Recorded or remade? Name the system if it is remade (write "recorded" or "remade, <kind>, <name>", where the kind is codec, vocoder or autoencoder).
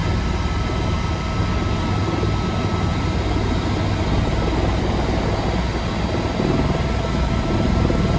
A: recorded